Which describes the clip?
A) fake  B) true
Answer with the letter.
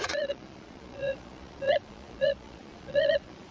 A